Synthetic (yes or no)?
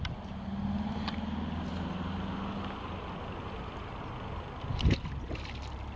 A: no